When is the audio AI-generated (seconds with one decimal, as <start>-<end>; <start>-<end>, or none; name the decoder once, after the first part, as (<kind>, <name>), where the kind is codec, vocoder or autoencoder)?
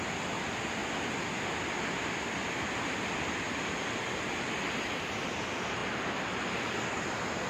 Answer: none